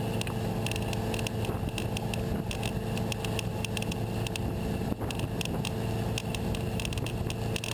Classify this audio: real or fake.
real